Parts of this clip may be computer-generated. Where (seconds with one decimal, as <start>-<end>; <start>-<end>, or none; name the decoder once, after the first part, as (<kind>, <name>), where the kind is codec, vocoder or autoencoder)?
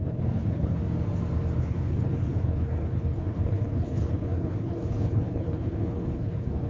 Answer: 0.0-0.8 (codec, HILCodec); 1.6-6.7